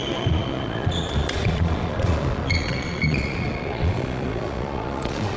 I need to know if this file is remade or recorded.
remade